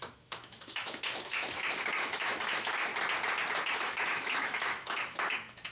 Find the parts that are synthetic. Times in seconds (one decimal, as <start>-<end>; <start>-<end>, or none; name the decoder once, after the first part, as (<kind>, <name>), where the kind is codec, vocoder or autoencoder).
0.0-2.9 (autoencoder, DAC-VAE); 3.6-5.7